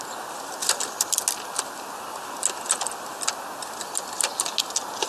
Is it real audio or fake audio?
real